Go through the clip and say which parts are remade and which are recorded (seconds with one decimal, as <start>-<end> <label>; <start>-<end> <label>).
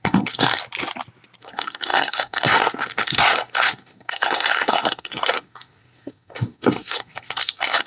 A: 0.0-0.6 remade; 0.6-1.4 recorded; 1.4-7.9 remade